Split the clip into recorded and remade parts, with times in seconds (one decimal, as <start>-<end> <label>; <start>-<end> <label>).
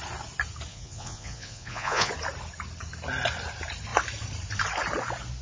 0.0-0.7 recorded; 0.7-2.1 remade; 2.1-5.4 recorded